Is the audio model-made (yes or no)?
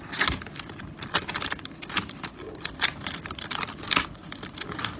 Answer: yes